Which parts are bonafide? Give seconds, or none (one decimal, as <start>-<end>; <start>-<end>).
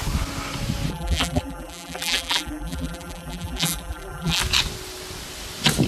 0.0-0.9; 4.4-5.9